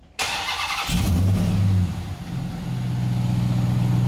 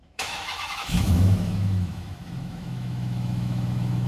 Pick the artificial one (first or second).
second